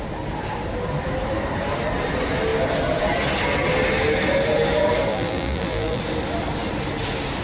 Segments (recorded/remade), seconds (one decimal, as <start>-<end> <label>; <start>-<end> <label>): 0.0-5.1 recorded; 5.1-6.0 remade; 6.0-7.4 recorded